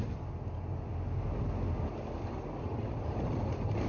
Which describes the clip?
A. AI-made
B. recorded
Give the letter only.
B